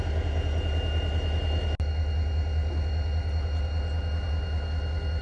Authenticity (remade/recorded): recorded